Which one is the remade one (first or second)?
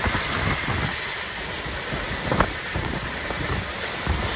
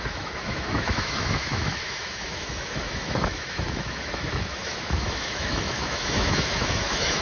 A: second